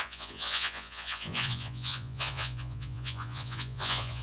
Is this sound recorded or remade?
remade